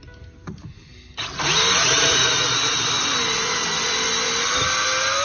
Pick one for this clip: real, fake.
real